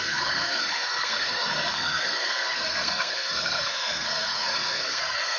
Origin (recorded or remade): remade